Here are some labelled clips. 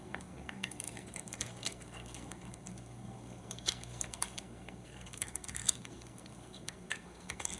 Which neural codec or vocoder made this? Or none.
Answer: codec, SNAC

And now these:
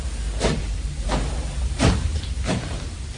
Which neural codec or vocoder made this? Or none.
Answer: none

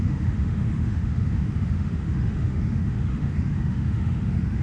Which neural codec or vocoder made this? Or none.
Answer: autoencoder, DAC-VAE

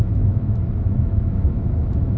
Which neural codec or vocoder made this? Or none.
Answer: autoencoder, DAC-VAE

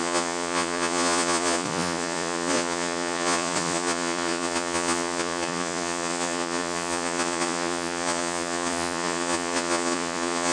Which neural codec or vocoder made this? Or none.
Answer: vocoder, Vocos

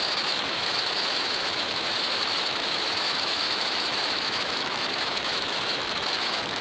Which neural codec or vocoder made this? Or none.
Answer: autoencoder, DAC-VAE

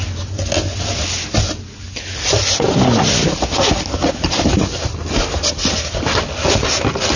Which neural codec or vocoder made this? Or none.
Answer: none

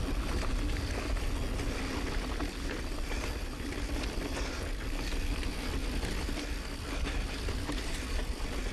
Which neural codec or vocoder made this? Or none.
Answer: none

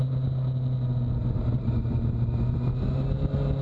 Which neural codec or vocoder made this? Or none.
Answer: none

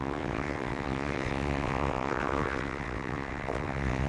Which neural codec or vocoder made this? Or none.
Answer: vocoder, WaveNeXt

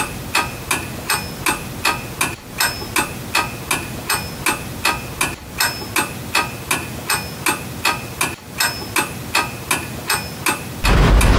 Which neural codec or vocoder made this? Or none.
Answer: none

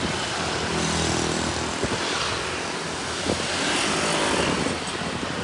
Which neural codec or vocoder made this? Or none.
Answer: none